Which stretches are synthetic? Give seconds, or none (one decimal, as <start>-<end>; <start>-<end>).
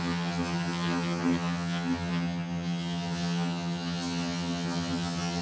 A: 0.0-5.4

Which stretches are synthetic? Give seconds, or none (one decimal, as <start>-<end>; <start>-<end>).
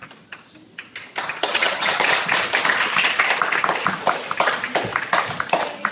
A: 1.4-2.0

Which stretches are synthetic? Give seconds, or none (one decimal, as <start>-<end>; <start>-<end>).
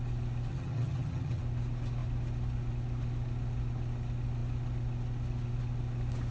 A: 0.5-1.4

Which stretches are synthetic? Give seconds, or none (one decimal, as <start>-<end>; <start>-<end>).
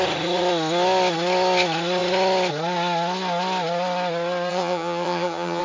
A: 4.5-5.6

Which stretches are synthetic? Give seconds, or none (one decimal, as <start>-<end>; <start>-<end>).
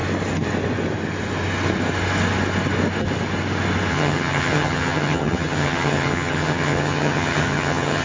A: 3.9-8.0